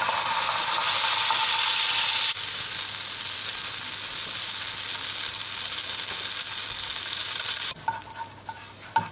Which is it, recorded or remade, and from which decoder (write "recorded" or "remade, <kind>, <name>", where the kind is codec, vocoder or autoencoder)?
recorded